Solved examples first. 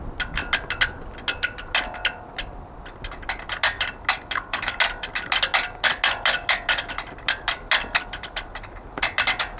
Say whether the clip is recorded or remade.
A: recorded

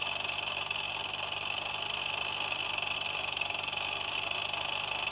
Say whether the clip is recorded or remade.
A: recorded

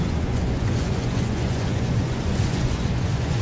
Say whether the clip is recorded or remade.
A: remade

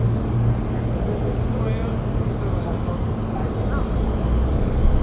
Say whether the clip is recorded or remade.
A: recorded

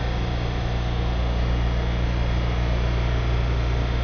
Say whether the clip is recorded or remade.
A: recorded